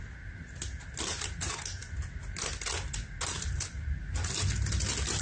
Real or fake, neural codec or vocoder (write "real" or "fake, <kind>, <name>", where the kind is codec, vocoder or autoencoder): real